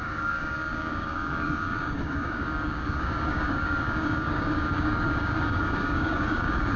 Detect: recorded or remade remade